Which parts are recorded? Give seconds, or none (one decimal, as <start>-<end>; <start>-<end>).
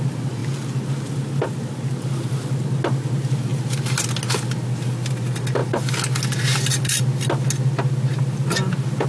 0.0-9.1